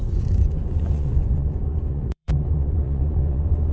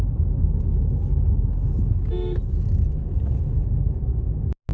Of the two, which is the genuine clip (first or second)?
second